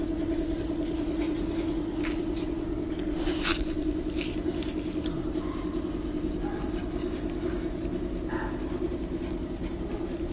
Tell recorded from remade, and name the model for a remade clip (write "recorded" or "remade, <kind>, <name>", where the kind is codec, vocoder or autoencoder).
recorded